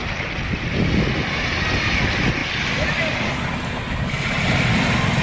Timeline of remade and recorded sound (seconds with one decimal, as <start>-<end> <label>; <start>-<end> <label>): 0.0-5.2 recorded